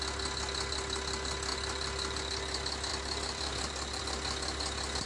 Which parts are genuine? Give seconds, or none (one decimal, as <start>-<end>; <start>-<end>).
0.0-2.9; 4.0-5.1

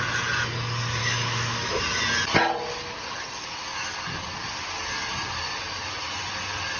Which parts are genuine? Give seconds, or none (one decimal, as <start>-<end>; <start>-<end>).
0.0-1.0; 1.8-6.8

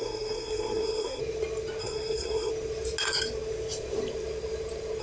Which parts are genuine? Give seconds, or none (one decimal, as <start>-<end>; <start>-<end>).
1.2-1.8; 2.5-5.0